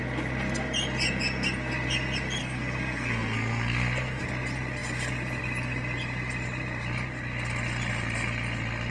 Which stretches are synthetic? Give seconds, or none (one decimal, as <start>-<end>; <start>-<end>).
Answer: 2.4-4.2